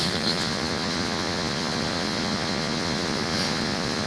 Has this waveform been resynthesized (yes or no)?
yes